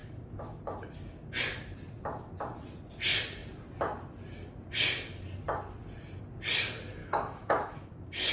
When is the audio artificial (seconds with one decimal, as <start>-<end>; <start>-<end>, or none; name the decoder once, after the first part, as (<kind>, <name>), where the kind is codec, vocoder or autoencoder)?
0.0-0.6 (autoencoder, DAC-VAE); 7.0-7.9